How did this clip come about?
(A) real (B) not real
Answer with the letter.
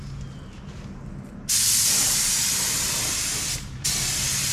A